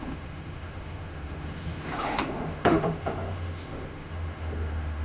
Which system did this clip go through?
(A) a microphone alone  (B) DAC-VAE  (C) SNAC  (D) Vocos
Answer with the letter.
B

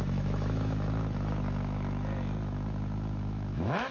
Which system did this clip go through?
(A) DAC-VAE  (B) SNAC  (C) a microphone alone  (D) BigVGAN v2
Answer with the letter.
A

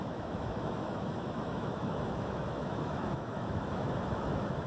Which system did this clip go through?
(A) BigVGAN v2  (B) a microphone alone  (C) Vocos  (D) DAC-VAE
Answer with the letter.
D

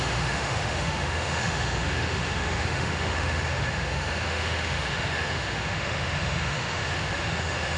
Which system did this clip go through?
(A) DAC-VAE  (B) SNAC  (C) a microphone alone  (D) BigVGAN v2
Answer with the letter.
A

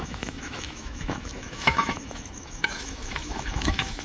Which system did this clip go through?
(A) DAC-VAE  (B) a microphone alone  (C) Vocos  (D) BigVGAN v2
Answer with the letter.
A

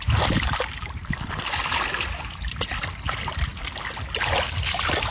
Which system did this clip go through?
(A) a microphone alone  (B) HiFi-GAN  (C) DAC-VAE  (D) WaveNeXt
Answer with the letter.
A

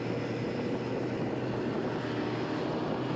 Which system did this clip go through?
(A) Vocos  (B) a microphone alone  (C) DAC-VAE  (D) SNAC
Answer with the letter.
B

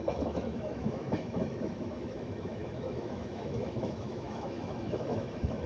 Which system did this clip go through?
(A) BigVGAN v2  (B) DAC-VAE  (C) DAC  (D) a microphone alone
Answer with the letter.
B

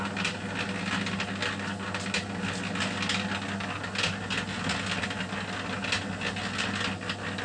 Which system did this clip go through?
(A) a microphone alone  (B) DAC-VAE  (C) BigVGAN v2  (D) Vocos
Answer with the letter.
A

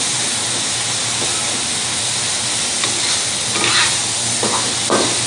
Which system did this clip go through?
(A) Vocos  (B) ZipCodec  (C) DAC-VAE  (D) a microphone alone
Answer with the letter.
D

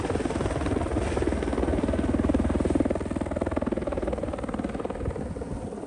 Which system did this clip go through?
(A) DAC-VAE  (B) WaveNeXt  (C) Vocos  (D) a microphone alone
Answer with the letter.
D